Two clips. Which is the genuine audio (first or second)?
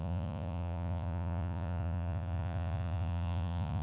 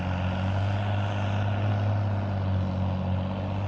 second